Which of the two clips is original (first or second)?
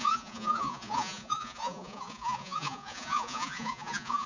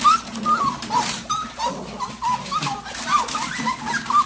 second